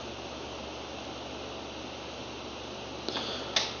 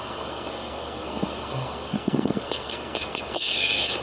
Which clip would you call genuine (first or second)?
first